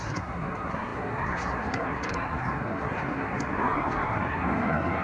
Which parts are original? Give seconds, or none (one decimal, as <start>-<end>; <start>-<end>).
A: none